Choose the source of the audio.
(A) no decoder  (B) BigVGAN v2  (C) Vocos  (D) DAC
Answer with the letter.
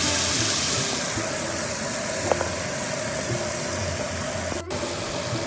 A